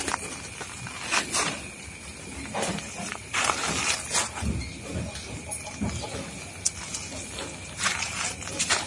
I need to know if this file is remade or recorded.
recorded